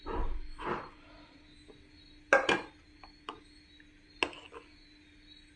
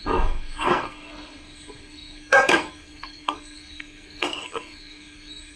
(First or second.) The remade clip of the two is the second